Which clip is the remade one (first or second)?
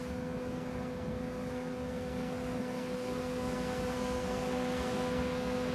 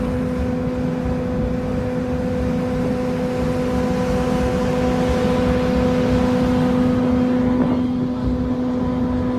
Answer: first